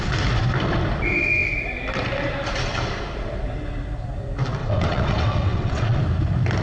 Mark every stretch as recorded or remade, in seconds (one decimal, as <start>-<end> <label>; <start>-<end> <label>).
0.0-4.6 recorded; 4.6-6.0 remade; 6.0-6.6 recorded